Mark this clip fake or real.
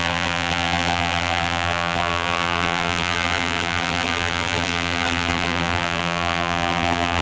fake